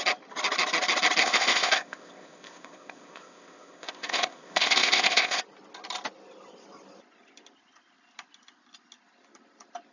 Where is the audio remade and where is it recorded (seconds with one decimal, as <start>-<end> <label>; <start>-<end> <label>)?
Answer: 0.0-1.2 recorded; 1.2-5.4 remade; 5.4-9.9 recorded